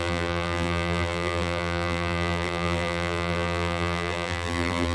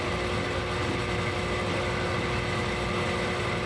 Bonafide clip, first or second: second